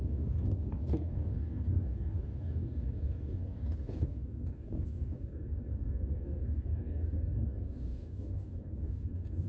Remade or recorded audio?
remade